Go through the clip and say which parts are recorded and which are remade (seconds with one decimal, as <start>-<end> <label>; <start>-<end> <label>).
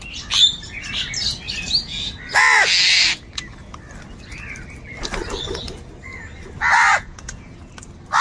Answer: 0.0-6.9 recorded; 6.9-7.7 remade; 7.7-8.2 recorded